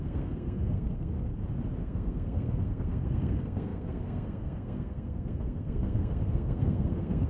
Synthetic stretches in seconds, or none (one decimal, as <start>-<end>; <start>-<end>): 0.0-1.3; 1.8-7.3

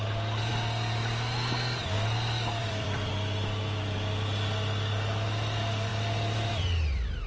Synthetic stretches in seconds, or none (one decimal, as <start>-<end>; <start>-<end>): 2.6-3.1

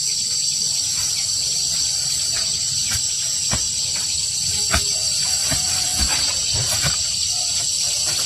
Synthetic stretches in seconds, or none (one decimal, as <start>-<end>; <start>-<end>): 5.9-7.6

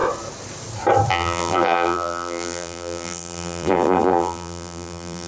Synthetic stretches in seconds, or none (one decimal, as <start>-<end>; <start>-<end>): 1.1-5.3